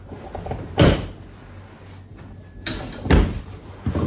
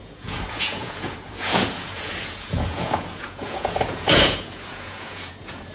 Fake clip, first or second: second